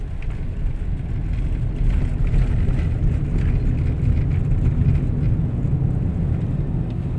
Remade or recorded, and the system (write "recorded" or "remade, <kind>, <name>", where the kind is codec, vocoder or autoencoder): recorded